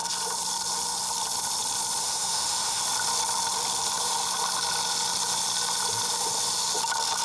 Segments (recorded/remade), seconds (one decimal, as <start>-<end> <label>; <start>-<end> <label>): 0.0-2.0 recorded; 2.0-2.8 remade; 2.8-7.2 recorded